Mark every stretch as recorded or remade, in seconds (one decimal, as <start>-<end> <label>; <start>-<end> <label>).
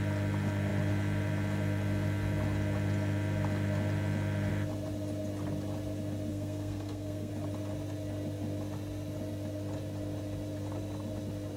0.0-6.3 recorded; 6.3-7.3 remade; 7.3-11.6 recorded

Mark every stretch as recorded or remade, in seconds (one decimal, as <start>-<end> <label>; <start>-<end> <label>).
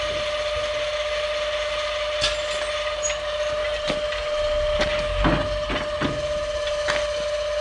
0.0-7.6 recorded